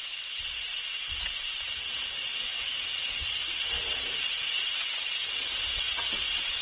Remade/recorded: remade